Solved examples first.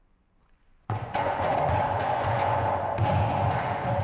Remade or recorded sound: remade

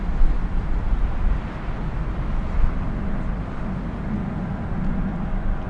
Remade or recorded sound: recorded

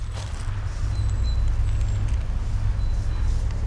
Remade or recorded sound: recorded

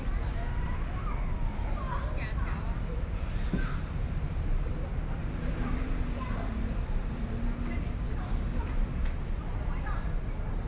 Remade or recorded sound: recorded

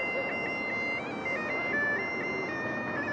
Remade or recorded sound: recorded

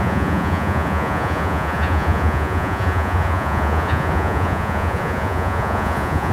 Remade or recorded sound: remade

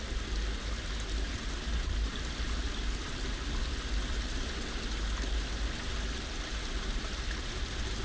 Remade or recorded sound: recorded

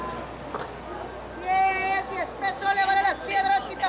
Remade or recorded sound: recorded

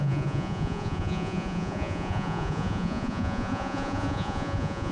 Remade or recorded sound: remade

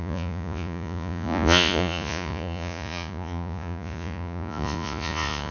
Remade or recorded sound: remade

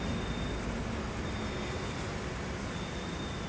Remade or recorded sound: recorded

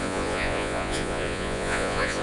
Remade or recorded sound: remade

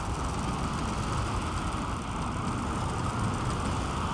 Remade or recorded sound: recorded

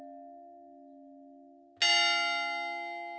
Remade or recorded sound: recorded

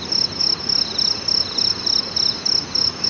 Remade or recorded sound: recorded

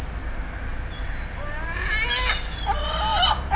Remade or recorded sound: recorded